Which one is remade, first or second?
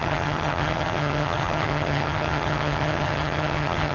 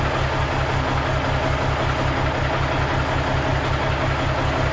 first